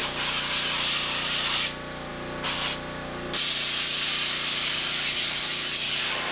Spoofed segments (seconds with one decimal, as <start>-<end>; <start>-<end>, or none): none